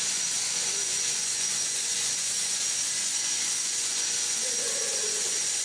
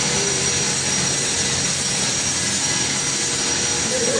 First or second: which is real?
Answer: second